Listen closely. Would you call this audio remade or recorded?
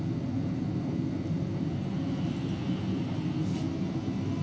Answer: recorded